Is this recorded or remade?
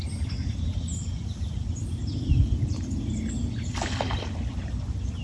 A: recorded